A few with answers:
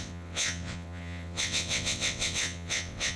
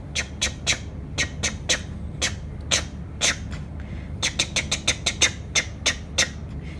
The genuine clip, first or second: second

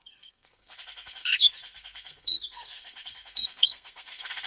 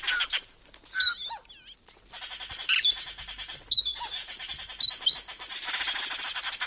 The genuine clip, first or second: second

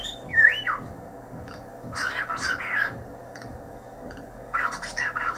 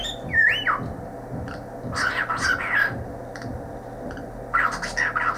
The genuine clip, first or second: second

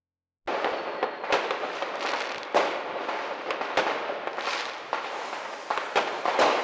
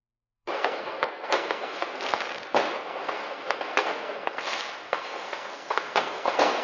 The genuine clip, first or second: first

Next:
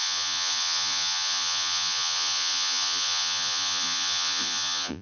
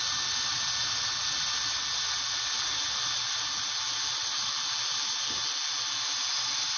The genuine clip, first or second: second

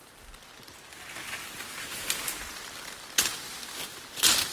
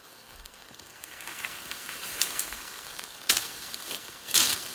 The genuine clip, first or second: first